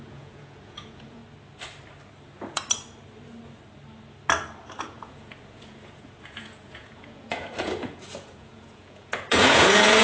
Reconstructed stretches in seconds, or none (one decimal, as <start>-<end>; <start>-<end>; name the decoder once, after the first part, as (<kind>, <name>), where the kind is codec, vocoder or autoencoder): 0.0-1.2 (vocoder, Vocos); 4.8-10.0